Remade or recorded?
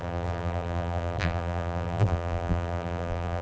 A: remade